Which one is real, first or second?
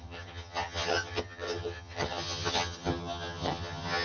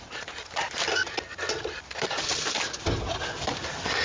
second